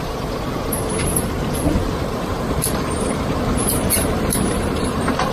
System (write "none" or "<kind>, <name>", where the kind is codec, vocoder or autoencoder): vocoder, BigVGAN v2